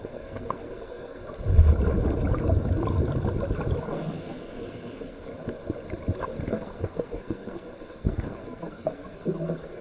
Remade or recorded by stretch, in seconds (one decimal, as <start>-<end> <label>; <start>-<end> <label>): 0.0-1.2 remade; 1.2-3.8 recorded; 3.8-5.3 remade; 5.3-6.2 recorded; 6.2-9.8 remade

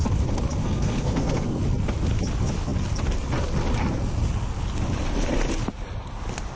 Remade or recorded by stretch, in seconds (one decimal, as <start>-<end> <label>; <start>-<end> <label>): 0.0-0.6 recorded; 0.6-1.6 remade; 1.6-6.6 recorded